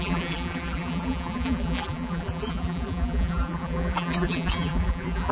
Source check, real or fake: fake